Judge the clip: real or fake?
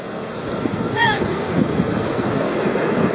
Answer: fake